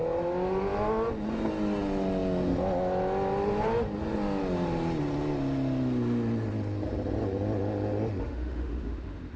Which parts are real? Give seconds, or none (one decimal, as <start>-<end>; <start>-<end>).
0.0-8.2